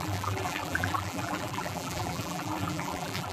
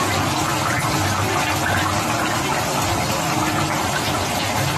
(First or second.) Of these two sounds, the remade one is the first